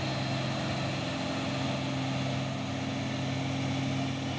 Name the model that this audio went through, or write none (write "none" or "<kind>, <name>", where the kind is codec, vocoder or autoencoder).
none